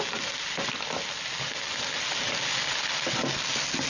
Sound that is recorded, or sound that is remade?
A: recorded